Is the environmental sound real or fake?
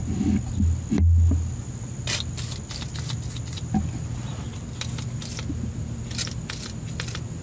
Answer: real